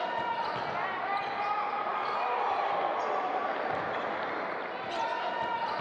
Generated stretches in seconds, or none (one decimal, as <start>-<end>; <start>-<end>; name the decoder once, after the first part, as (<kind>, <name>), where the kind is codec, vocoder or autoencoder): none